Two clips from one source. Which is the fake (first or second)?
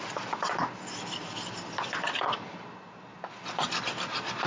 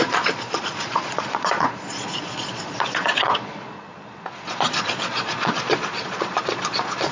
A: second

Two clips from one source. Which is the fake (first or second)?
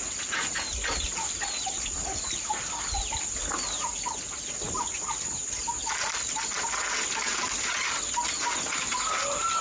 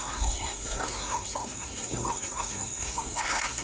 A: second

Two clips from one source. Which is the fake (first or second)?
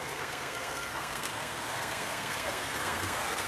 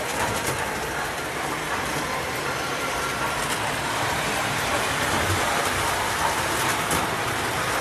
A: first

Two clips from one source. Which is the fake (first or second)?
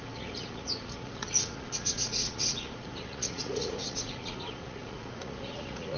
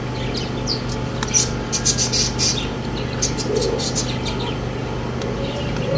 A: first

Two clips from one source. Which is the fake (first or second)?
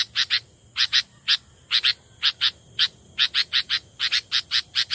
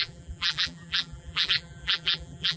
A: second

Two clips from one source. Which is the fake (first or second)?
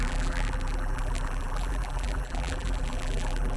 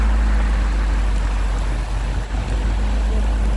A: first